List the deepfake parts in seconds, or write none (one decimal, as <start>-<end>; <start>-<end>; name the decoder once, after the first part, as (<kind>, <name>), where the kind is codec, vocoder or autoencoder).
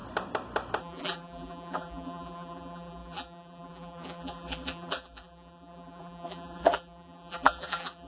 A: 0.8-8.1 (vocoder, BigVGAN v2)